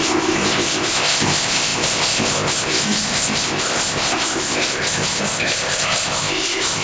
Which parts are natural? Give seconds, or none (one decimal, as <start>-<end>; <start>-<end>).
none